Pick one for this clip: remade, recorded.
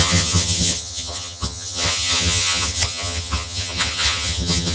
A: remade